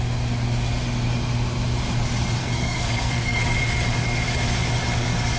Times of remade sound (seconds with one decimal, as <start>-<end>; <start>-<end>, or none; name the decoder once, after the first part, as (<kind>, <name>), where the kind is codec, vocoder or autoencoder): 2.4-3.4 (codec, SNAC)